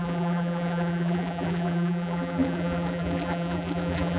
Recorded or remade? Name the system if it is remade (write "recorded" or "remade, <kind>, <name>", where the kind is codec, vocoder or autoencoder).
remade, vocoder, BigVGAN v2